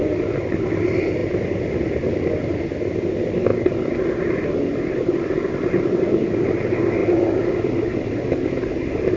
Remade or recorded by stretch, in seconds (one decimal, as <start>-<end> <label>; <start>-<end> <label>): 0.0-9.2 recorded